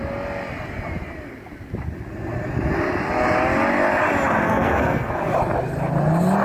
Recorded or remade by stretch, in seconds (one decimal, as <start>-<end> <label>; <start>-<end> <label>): 0.0-4.4 recorded; 4.4-5.1 remade; 5.1-6.4 recorded